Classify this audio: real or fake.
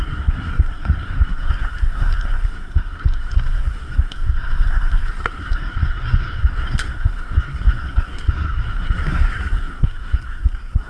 fake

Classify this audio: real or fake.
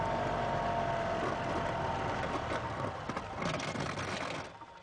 real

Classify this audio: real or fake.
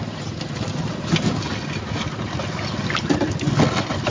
real